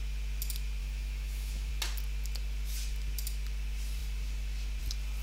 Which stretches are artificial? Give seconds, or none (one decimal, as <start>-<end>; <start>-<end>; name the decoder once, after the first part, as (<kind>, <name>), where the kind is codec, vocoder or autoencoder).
0.8-1.7 (autoencoder, DAC-VAE)